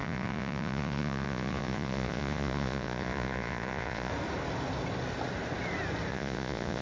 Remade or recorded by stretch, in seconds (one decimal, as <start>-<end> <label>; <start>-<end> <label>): 0.0-4.1 remade; 4.1-6.1 recorded; 6.1-6.8 remade